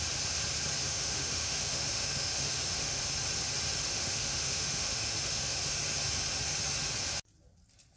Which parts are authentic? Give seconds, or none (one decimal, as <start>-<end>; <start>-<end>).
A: 0.0-0.8; 3.0-3.9; 5.6-8.0